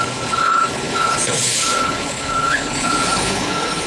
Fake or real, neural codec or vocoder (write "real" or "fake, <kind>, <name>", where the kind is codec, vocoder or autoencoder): fake, codec, HILCodec